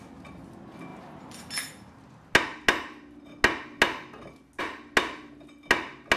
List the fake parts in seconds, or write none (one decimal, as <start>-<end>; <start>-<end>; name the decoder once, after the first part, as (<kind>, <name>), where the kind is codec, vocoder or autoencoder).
none